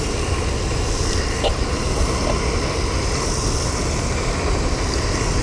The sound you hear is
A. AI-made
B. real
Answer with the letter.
B